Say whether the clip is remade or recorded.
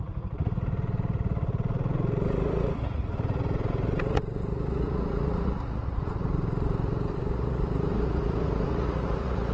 remade